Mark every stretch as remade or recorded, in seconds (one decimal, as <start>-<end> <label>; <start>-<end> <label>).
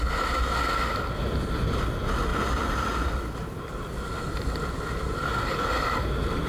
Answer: 0.0-6.5 recorded